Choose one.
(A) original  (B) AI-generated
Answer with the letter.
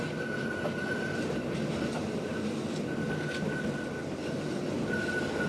A